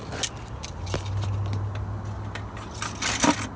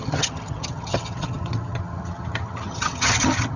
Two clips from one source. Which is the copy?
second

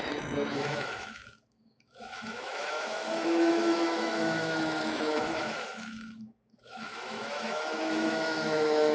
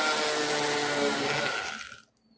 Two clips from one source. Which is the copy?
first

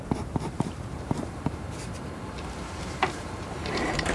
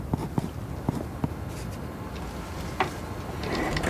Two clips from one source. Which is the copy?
first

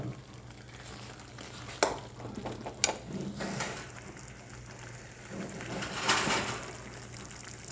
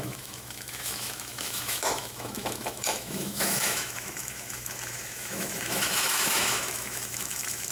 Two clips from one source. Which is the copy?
second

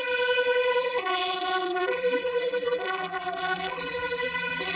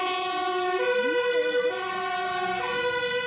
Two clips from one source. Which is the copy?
first